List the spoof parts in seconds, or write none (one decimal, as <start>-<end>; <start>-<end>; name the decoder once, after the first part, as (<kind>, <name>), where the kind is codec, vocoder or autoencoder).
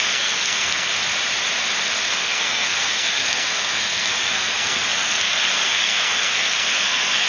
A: 0.0-0.9 (codec, SNAC); 2.1-7.3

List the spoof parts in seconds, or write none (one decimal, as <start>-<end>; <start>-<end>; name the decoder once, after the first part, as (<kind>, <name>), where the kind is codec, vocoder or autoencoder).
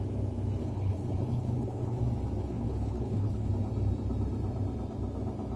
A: 0.6-2.0 (codec, HILCodec); 2.4-3.5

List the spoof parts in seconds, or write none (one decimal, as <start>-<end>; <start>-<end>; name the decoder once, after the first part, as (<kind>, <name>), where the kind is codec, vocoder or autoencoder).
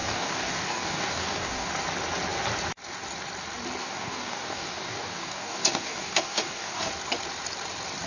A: 0.0-1.7 (codec, DAC); 3.8-6.9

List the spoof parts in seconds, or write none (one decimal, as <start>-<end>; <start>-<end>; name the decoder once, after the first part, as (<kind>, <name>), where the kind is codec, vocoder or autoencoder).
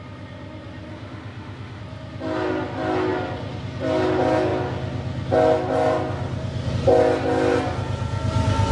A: 0.9-1.8 (autoencoder, DAC-VAE)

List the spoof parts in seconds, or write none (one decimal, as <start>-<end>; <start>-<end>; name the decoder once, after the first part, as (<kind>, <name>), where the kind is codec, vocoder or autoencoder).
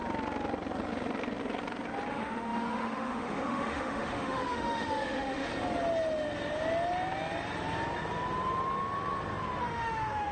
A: 2.1-5.5 (autoencoder, DAC-VAE); 9.6-10.3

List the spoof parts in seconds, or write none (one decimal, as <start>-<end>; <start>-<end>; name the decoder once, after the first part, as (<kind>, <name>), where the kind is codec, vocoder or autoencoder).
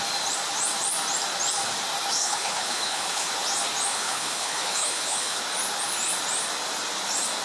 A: 2.2-3.3 (codec, HILCodec); 3.9-5.4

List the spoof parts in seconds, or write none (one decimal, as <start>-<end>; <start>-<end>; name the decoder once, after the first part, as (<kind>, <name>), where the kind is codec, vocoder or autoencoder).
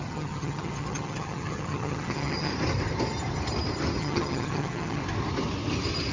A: 0.0-2.5 (vocoder, HiFi-GAN); 4.0-5.0